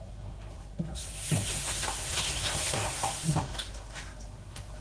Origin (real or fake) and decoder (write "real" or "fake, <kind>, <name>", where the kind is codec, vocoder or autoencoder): fake, codec, SNAC